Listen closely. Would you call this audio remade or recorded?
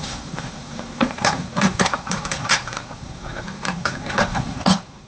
remade